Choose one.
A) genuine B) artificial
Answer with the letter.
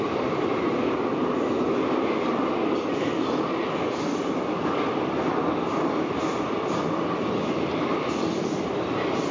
A